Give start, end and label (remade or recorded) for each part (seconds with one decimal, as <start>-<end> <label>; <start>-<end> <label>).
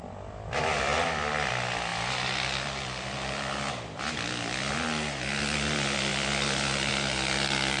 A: 0.0-7.8 recorded